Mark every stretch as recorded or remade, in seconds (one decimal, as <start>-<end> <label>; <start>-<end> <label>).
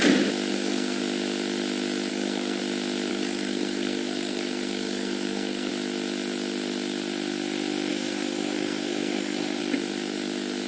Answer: 0.0-0.5 recorded; 0.5-1.0 remade; 1.0-2.1 recorded; 2.1-2.6 remade; 2.6-3.1 recorded; 3.1-5.7 remade; 5.7-7.9 recorded; 7.9-9.6 remade; 9.6-10.7 recorded